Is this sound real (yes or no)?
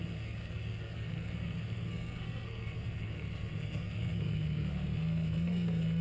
no